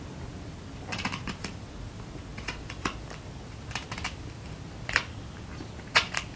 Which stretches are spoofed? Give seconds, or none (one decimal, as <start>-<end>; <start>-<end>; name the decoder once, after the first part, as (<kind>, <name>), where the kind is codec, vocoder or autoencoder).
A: 2.3-4.2 (vocoder, BigVGAN v2)